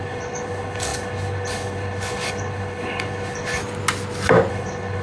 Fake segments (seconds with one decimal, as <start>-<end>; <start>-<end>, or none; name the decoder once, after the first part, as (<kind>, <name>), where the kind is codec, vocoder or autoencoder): 0.0-3.6 (codec, HILCodec); 4.5-5.0